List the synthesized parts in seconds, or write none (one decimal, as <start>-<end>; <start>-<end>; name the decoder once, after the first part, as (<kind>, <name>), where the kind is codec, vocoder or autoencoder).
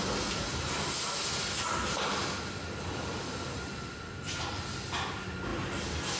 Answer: none